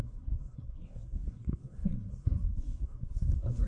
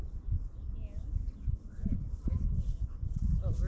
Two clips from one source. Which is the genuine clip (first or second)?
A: second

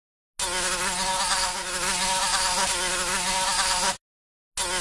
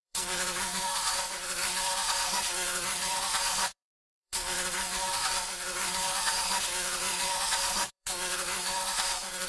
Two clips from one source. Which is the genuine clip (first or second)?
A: first